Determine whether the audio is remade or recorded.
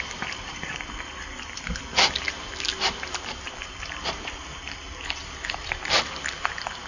remade